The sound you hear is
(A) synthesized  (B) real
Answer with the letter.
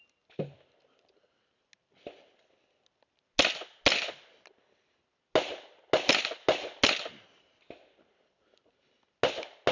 B